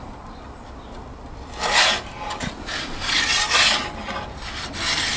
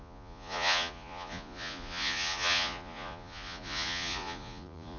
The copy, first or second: second